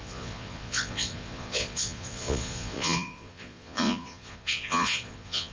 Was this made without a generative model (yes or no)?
no